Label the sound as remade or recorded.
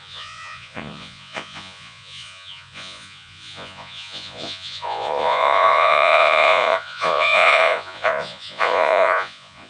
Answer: remade